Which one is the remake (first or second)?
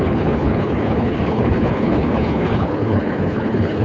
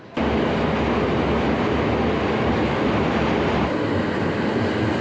first